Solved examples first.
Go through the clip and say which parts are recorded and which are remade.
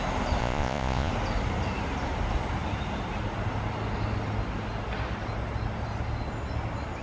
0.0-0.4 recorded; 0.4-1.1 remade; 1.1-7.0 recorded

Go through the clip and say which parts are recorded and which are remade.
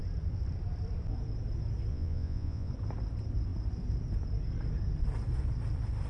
0.0-1.9 recorded; 1.9-2.7 remade; 2.7-6.1 recorded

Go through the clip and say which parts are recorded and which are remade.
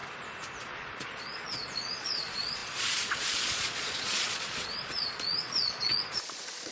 0.0-0.6 recorded; 0.6-6.7 remade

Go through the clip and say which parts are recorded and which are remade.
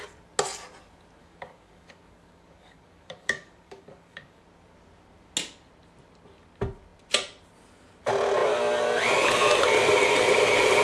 0.0-1.2 recorded; 1.2-4.4 remade; 4.4-10.8 recorded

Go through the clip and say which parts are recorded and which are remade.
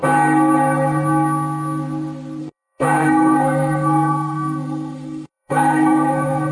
0.0-2.4 recorded; 2.4-6.5 remade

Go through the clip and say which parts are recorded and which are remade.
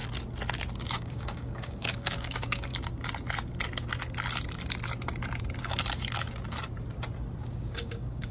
0.0-0.9 recorded; 0.9-2.7 remade; 2.7-7.4 recorded; 7.4-8.3 remade